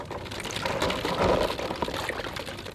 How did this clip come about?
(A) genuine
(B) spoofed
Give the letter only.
B